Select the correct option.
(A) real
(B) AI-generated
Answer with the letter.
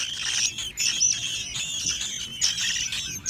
A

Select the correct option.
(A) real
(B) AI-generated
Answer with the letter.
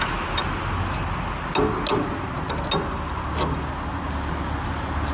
A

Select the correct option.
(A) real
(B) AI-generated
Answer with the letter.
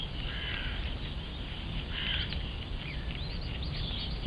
A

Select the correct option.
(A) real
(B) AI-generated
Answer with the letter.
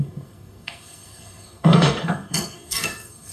B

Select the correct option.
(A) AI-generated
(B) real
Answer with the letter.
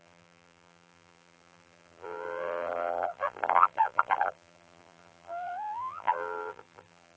A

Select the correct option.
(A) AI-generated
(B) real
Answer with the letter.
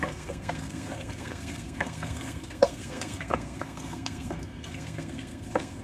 A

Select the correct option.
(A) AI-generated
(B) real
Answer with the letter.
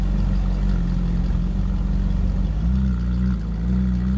B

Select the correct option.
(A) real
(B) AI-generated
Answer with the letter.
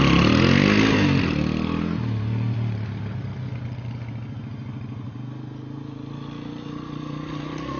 A